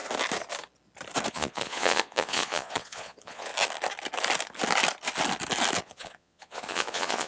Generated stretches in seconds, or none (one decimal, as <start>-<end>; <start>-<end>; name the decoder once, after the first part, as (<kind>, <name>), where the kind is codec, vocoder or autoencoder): 1.3-3.5 (vocoder, Vocos); 5.8-7.3